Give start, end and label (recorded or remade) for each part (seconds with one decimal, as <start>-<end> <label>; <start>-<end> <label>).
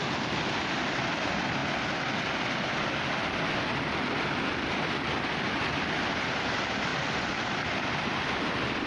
0.0-6.9 recorded; 6.9-8.2 remade; 8.2-8.9 recorded